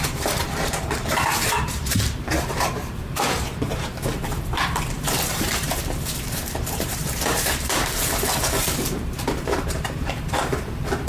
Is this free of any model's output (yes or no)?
no